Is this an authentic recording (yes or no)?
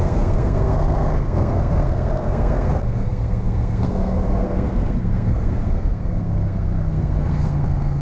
no